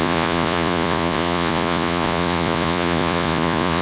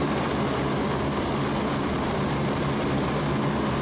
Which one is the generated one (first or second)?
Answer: first